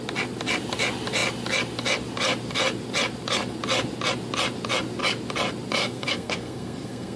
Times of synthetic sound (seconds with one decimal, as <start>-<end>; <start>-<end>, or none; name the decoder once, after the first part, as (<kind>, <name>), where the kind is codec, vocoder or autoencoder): 5.8-7.2 (codec, SNAC)